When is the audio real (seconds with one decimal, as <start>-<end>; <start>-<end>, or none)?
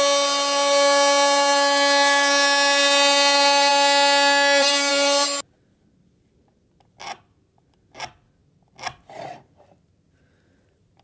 0.0-11.0